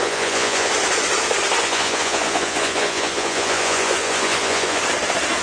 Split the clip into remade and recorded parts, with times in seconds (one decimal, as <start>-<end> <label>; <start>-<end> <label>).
0.0-0.7 remade; 0.7-1.6 recorded; 1.6-4.8 remade; 4.8-5.4 recorded